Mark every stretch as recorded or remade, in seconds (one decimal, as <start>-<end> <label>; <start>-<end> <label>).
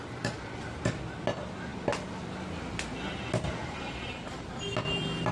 0.0-3.6 recorded; 3.6-4.5 remade; 4.5-5.3 recorded